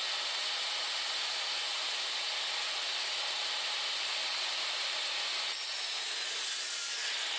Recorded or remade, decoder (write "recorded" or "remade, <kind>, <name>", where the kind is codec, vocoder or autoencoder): recorded